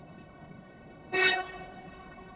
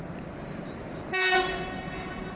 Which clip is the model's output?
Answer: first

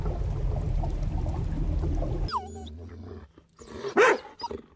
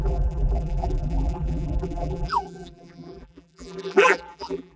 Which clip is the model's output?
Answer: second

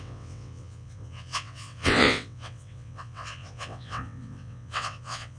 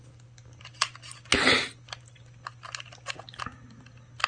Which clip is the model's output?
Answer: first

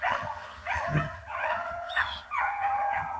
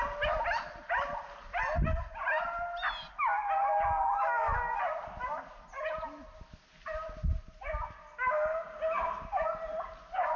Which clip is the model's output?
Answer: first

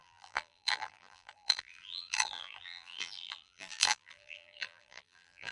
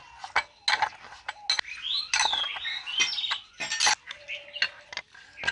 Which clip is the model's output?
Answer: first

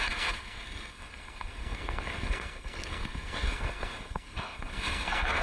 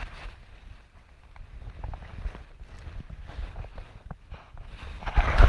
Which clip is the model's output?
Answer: first